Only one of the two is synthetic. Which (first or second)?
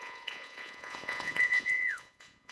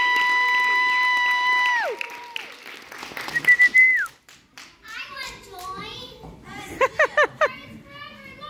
first